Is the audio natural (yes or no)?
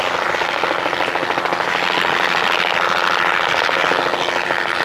yes